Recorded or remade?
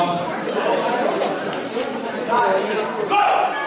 remade